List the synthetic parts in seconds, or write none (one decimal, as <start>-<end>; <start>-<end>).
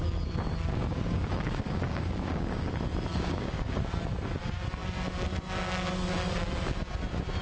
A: 0.7-2.7; 3.1-3.8